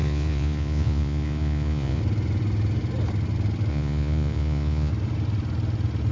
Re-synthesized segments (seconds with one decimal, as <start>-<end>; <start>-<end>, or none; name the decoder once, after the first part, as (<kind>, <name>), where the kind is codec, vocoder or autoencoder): 0.0-2.0 (vocoder, Vocos); 3.7-4.9